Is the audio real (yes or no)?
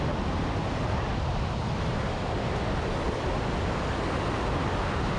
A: yes